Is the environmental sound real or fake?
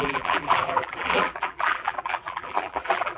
fake